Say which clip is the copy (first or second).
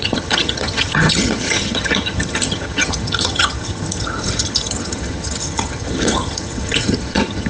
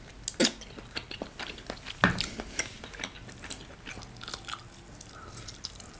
first